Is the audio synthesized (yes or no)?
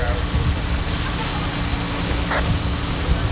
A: no